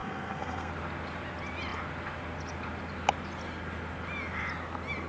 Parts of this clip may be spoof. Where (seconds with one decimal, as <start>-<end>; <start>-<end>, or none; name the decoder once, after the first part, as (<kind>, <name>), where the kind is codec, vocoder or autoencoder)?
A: 0.0-0.7 (codec, SNAC)